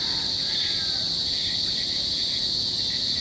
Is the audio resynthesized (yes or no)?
no